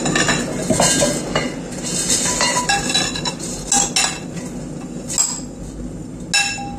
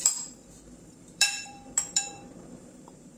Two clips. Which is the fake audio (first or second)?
second